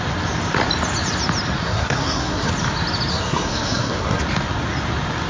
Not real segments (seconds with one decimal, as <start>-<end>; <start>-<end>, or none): 1.6-2.5; 3.1-4.2